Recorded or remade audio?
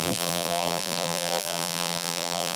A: remade